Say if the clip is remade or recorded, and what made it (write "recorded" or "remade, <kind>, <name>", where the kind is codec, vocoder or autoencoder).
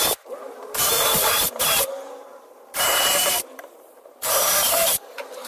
remade, vocoder, BigVGAN v2